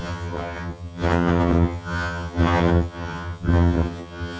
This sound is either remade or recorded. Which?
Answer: remade